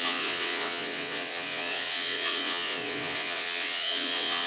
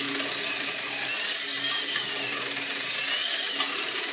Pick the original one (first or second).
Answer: second